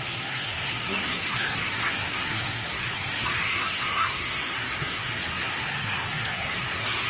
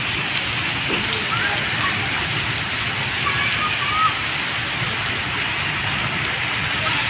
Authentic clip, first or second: second